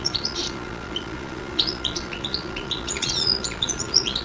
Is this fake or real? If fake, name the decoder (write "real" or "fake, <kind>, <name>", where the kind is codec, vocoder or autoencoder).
fake, vocoder, Vocos